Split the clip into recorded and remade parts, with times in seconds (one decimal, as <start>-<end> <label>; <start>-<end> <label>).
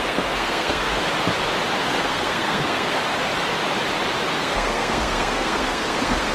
0.0-0.9 remade; 0.9-1.8 recorded; 1.8-3.0 remade; 3.0-4.4 recorded; 4.4-6.3 remade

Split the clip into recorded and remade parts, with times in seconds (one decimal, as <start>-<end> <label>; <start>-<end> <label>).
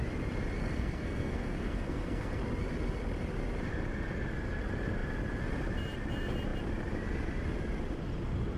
0.0-0.6 recorded; 0.6-2.4 remade; 2.4-8.6 recorded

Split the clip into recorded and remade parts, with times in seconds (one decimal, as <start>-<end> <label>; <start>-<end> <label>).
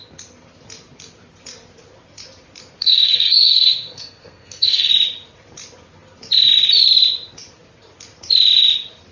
0.0-2.8 recorded; 2.8-4.9 remade; 4.9-9.1 recorded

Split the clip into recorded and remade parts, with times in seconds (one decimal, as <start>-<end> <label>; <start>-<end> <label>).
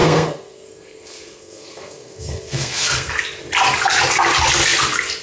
0.0-3.1 remade; 3.1-5.2 recorded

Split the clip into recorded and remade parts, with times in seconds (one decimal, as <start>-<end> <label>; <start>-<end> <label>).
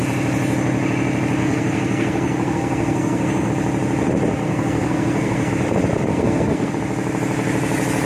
0.0-1.4 recorded; 1.4-3.5 remade; 3.5-4.4 recorded; 4.4-5.5 remade; 5.5-6.1 recorded; 6.1-6.7 remade; 6.7-8.1 recorded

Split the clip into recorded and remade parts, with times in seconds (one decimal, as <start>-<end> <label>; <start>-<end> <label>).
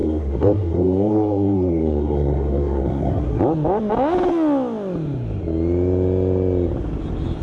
0.0-3.4 remade; 3.4-7.4 recorded